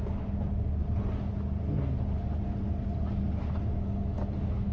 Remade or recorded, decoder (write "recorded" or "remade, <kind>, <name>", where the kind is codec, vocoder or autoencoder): recorded